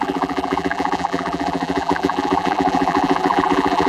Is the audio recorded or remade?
remade